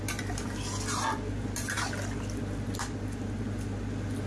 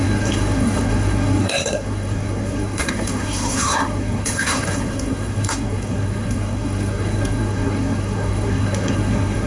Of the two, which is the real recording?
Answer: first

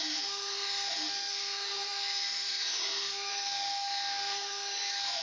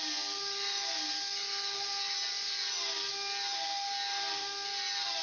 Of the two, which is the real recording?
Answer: second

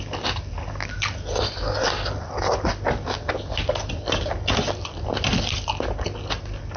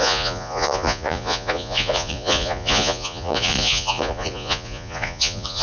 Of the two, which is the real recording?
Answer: first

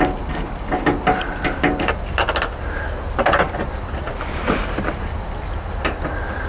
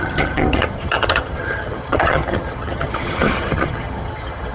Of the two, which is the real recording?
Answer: first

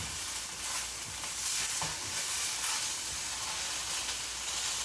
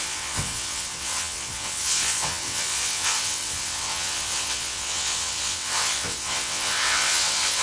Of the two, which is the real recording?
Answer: first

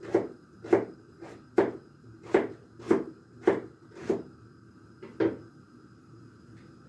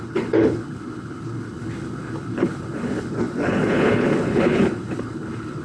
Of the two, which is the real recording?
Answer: first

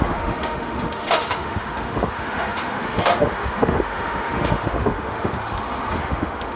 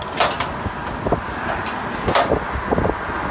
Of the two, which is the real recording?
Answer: second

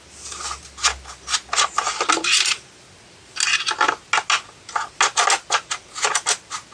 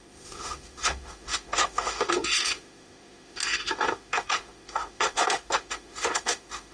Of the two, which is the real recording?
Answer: first